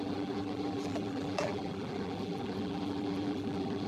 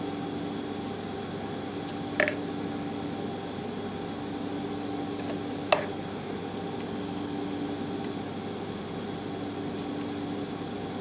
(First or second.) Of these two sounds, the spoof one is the first